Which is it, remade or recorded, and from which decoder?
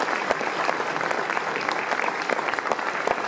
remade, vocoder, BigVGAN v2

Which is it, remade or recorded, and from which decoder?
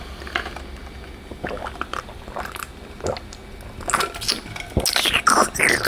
recorded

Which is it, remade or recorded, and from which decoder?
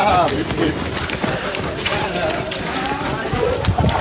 recorded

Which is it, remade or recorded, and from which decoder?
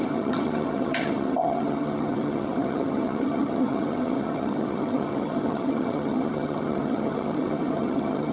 remade, vocoder, HiFi-GAN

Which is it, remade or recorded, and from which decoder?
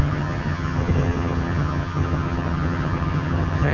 remade, vocoder, HiFi-GAN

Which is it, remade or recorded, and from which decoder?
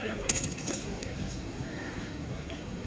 remade, codec, SNAC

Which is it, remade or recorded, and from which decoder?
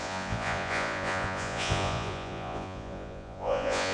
remade, vocoder, Vocos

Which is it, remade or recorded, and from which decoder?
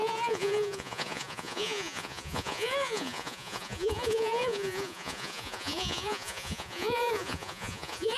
remade, vocoder, Vocos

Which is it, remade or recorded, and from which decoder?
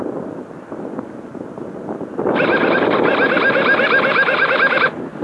recorded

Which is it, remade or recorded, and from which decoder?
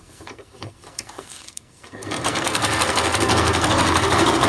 remade, codec, SNAC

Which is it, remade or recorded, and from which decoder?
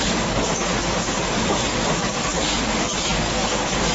remade, codec, DAC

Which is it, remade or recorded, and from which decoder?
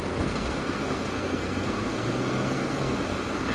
remade, codec, SNAC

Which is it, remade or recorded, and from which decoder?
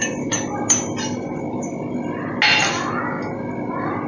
recorded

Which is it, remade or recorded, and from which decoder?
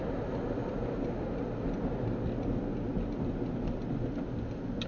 recorded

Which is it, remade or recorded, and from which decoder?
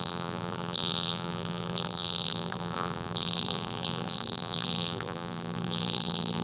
remade, vocoder, BigVGAN v2